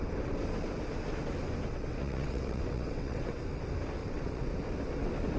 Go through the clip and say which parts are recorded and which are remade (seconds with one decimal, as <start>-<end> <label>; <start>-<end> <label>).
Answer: 0.0-1.7 recorded; 1.7-3.4 remade; 3.4-4.0 recorded; 4.0-4.5 remade; 4.5-5.4 recorded